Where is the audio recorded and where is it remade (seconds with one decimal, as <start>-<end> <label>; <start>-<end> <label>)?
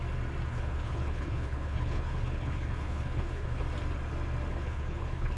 0.0-0.5 recorded; 0.5-3.6 remade; 3.6-4.5 recorded; 4.5-5.4 remade